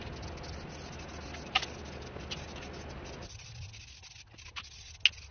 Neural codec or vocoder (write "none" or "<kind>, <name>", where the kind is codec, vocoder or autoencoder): none